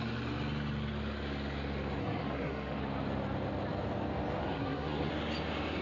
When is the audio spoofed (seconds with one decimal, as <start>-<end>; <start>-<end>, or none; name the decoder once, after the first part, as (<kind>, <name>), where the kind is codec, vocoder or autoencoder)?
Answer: 2.0-2.8 (codec, SNAC); 4.4-5.1